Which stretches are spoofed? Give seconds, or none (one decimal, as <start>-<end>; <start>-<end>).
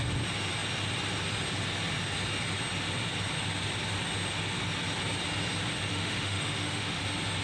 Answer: 5.9-7.0